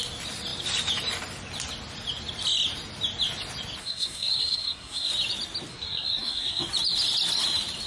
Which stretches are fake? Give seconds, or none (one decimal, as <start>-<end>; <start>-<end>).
3.8-5.1; 5.7-6.6

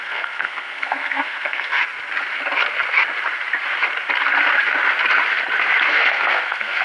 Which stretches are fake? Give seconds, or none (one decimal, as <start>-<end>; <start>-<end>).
0.0-1.8; 5.9-6.8

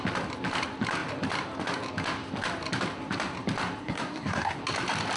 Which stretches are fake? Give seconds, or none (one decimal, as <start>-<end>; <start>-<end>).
3.8-4.6

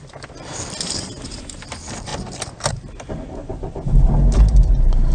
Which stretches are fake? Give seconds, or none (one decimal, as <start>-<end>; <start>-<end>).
none

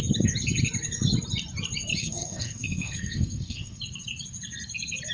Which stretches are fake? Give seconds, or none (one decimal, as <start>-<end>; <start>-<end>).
2.0-3.8

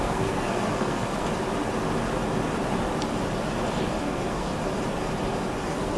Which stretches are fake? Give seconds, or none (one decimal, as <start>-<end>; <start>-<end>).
0.0-1.3; 4.0-4.5; 5.6-6.0

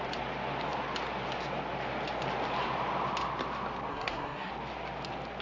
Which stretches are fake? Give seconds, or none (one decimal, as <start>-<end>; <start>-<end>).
3.9-4.5

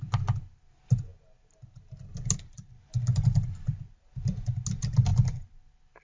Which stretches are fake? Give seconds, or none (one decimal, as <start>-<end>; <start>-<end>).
none